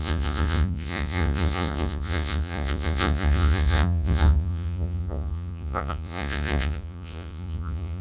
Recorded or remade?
remade